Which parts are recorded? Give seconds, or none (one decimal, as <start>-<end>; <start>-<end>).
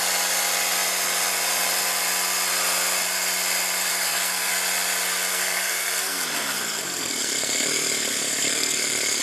0.0-3.9; 4.5-5.3